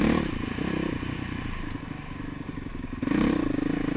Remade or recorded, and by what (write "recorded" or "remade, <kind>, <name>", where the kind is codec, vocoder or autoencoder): recorded